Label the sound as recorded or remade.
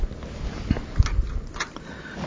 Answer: recorded